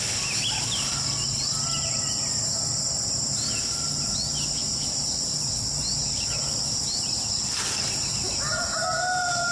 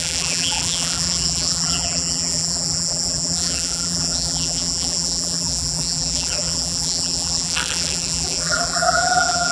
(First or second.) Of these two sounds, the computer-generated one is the second